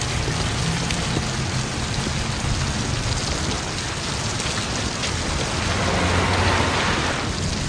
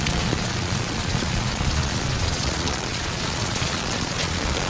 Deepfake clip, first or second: second